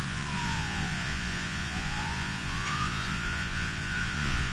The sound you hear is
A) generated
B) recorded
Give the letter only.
A